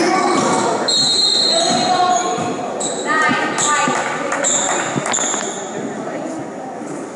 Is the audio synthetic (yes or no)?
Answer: no